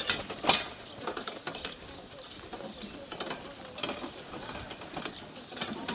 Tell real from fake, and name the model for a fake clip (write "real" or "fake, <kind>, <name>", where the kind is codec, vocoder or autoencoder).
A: real